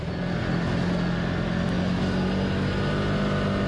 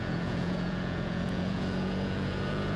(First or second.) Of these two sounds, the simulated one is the second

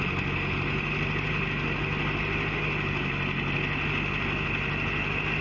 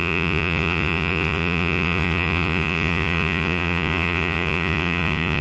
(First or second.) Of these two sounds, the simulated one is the second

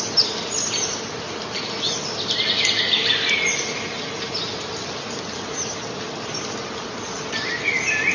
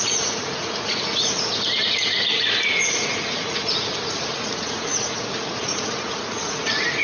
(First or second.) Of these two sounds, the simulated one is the second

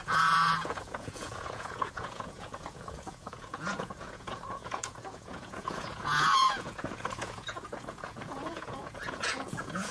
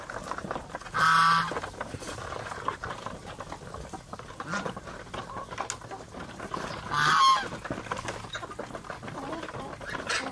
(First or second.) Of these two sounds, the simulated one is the first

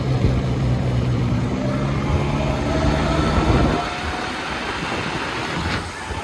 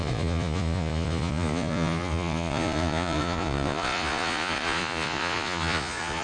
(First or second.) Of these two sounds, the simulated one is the second